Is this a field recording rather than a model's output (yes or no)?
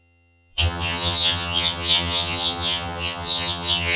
no